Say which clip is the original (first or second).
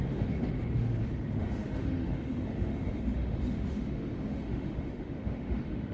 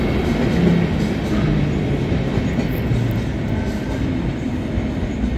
second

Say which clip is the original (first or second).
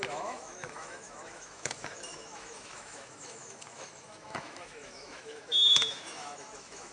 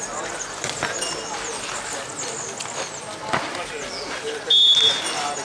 second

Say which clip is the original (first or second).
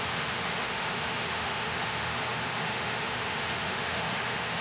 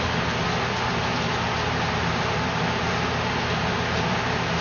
second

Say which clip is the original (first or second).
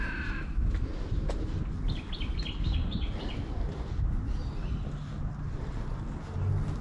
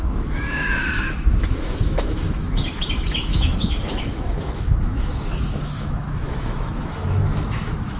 first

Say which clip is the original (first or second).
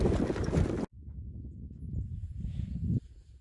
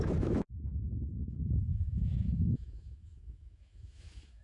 first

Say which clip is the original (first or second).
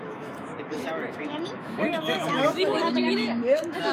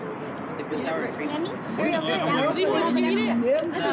second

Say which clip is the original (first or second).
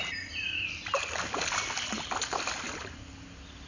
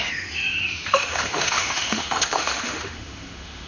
first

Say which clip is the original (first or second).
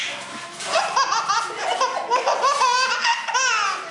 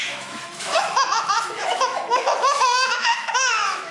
first